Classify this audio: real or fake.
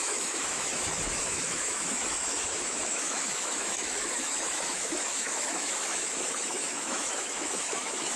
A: fake